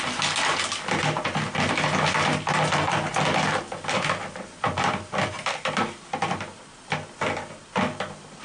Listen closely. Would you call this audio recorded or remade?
recorded